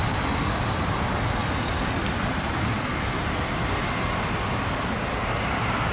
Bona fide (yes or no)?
yes